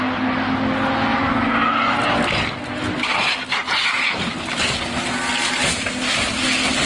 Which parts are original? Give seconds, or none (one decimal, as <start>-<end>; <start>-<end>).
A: 0.0-6.9